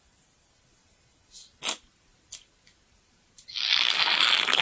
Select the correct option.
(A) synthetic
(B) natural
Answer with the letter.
B